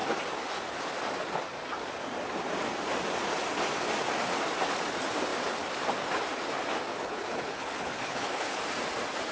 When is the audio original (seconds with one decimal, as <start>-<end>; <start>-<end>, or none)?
0.0-6.9; 8.6-9.3